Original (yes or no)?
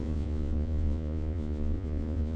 no